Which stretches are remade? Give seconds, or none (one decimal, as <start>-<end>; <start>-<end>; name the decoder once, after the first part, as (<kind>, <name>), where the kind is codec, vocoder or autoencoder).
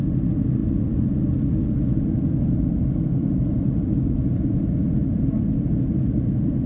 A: none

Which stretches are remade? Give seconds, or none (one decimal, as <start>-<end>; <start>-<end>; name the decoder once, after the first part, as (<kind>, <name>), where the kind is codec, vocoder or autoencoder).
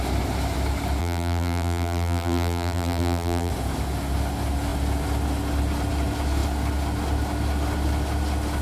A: 1.0-3.5 (vocoder, BigVGAN v2)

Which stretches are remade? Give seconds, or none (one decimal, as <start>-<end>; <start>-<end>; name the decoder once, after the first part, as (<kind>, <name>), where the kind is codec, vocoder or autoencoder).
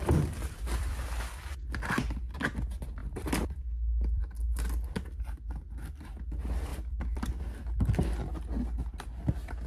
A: 0.0-2.2 (vocoder, BigVGAN v2); 3.0-4.2; 6.7-7.4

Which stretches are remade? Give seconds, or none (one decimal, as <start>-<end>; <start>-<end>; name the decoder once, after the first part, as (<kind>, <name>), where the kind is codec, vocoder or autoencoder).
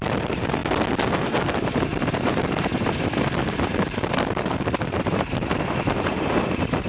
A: 0.0-0.6 (vocoder, BigVGAN v2); 1.4-6.9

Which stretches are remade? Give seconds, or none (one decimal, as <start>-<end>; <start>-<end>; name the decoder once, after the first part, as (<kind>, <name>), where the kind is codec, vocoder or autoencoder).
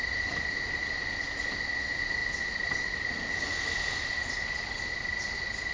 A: none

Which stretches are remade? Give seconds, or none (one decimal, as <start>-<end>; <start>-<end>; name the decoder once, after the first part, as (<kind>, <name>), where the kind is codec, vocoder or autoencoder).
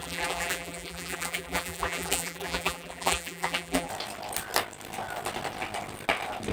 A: 0.0-3.9 (vocoder, BigVGAN v2)